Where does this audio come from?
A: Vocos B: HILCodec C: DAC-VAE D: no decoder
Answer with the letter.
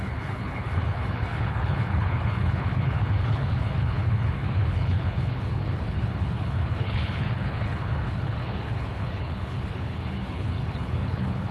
B